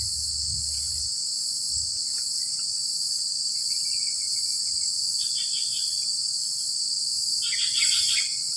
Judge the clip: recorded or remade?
recorded